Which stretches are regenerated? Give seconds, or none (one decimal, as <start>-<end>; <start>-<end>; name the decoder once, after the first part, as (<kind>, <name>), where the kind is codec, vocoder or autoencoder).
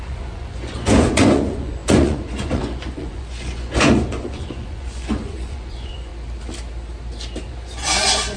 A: 0.0-6.1 (vocoder, Vocos); 7.5-8.4